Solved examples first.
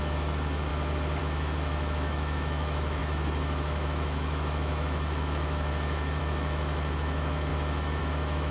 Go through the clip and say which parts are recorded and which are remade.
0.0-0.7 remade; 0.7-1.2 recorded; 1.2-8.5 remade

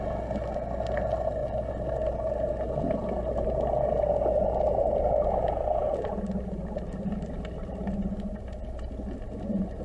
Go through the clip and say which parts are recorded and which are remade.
0.0-9.8 recorded

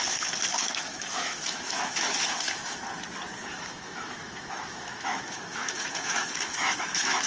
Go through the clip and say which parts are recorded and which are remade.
0.0-0.5 recorded; 0.5-2.8 remade; 2.8-3.4 recorded; 3.4-7.3 remade